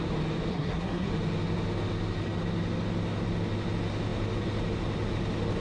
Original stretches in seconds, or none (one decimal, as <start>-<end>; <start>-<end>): 0.0-0.5; 1.1-5.6

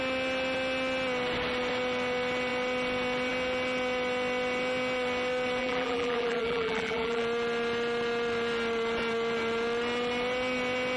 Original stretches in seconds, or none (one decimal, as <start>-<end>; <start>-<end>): 0.0-5.6; 7.2-11.0

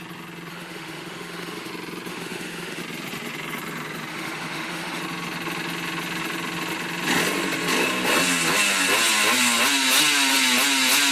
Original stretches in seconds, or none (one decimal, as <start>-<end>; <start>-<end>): 0.0-0.5; 1.7-2.1; 2.8-4.1; 5.0-11.1

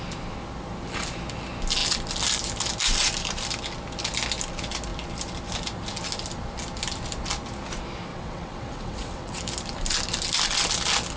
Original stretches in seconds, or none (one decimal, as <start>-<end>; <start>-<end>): 0.0-8.1; 9.4-11.2

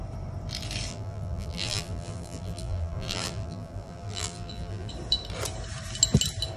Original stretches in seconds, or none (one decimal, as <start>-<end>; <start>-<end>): 0.0-0.9; 4.9-6.6

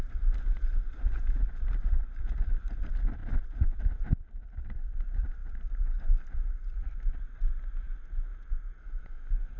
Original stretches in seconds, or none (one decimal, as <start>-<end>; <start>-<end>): 0.0-9.6